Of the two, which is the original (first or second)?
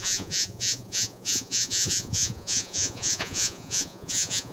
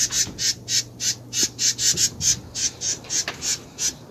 second